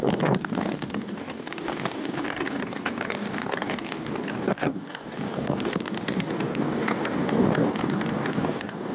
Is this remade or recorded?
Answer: remade